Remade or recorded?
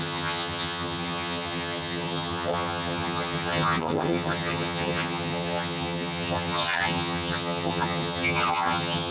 remade